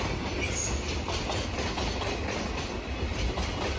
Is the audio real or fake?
real